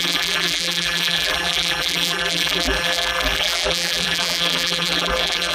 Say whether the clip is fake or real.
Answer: fake